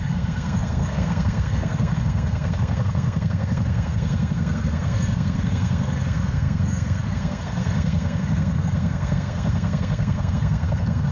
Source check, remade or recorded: remade